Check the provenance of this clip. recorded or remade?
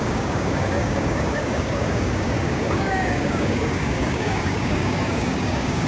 remade